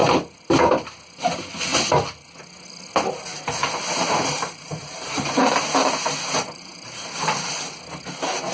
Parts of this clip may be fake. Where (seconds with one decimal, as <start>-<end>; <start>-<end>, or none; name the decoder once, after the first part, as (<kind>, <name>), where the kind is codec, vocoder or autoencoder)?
3.6-7.5 (vocoder, BigVGAN v2)